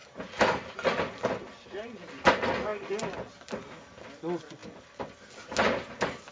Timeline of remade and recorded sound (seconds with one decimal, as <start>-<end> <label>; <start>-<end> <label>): 0.0-6.3 recorded